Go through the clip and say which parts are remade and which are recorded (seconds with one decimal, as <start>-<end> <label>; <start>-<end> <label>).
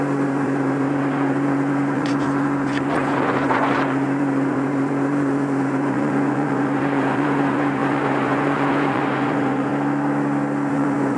0.0-9.7 remade; 9.7-10.7 recorded; 10.7-11.2 remade